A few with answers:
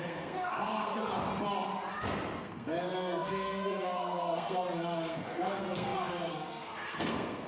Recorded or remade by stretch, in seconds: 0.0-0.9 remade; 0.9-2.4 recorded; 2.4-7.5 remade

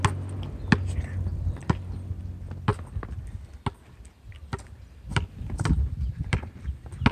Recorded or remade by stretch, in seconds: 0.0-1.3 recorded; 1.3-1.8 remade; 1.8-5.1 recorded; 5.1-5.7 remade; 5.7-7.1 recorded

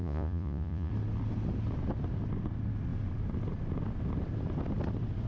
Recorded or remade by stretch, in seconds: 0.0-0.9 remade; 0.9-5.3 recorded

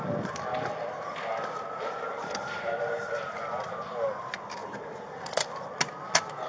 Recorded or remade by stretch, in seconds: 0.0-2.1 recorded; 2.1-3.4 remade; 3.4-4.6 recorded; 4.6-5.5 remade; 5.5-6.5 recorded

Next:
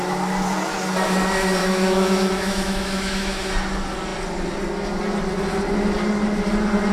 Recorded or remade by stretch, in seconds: 0.0-1.6 recorded; 1.6-3.5 remade; 3.5-6.9 recorded